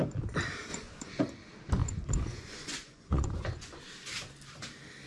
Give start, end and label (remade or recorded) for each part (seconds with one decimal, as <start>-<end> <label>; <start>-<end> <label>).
0.0-0.7 recorded; 0.7-1.2 remade; 1.2-1.8 recorded; 1.8-3.8 remade; 3.8-5.1 recorded